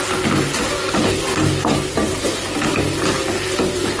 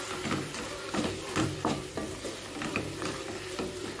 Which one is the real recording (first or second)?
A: first